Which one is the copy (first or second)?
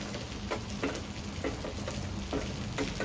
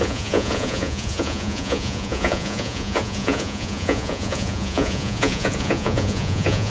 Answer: second